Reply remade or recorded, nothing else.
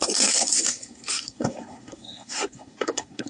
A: remade